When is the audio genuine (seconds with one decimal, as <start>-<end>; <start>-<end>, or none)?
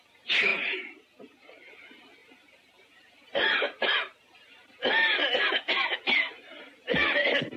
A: 0.0-2.2; 4.8-7.6